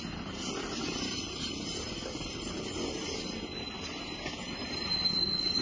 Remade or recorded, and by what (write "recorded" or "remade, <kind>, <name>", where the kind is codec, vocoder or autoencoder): recorded